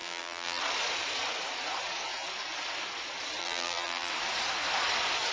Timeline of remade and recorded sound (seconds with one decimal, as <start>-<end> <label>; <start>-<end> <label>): 0.0-0.6 remade; 0.6-3.4 recorded; 3.4-4.1 remade; 4.1-5.3 recorded